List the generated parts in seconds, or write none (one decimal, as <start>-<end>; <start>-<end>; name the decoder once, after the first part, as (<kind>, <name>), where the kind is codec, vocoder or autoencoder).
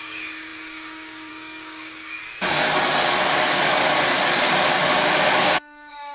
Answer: 0.0-2.2 (codec, DAC); 5.4-6.1